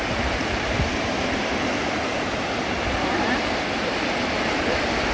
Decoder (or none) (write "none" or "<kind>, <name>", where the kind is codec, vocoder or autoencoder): vocoder, BigVGAN v2